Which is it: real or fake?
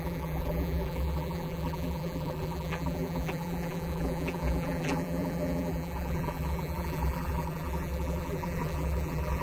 fake